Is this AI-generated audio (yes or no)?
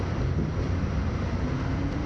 no